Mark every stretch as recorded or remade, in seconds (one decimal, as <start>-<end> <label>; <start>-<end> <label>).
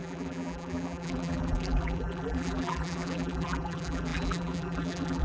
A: 0.0-5.2 remade